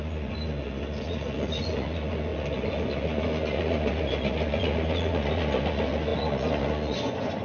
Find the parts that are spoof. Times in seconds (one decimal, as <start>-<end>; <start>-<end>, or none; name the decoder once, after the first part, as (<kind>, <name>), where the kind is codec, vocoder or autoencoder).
0.0-7.4 (vocoder, Vocos)